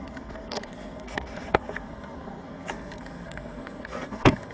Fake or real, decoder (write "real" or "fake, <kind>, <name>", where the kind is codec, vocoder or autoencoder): fake, codec, SNAC